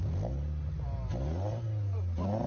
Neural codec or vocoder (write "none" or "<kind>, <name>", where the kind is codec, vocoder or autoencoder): none